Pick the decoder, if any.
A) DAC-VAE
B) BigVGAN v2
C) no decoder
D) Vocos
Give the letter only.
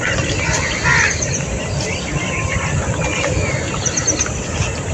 C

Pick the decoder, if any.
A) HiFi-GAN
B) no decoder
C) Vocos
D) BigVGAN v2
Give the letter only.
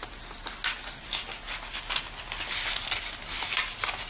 B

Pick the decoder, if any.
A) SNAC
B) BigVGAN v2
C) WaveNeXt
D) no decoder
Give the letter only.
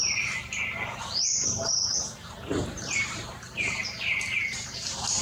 B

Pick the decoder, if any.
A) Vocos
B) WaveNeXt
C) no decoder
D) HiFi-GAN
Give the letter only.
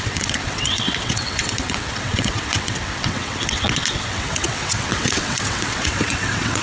B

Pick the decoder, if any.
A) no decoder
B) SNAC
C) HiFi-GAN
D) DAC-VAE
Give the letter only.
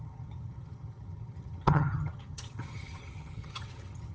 C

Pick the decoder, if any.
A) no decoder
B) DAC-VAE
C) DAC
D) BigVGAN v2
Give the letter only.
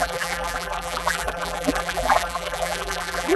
D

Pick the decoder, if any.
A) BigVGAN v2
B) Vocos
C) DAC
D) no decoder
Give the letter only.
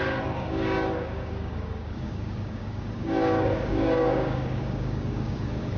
C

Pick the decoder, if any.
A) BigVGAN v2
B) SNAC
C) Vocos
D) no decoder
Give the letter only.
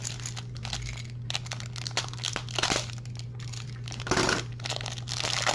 D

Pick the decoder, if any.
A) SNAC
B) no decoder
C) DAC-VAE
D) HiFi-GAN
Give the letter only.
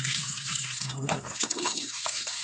A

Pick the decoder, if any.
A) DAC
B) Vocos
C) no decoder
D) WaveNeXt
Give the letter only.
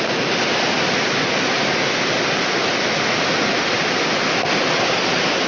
C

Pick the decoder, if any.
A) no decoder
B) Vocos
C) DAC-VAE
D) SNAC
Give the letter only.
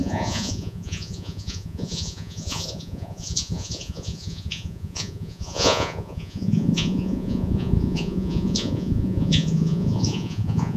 B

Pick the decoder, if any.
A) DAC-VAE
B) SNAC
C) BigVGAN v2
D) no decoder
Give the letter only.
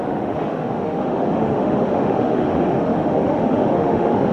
A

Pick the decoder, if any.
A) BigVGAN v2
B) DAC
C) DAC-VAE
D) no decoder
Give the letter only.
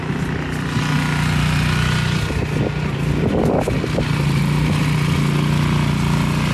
D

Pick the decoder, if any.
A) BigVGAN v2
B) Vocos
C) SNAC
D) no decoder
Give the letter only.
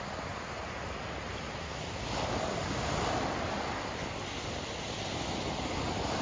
D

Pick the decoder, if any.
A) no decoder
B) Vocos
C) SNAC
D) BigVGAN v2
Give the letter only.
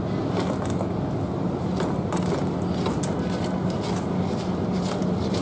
A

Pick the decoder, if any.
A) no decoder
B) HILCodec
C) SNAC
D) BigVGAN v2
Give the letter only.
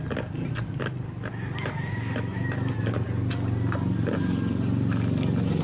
A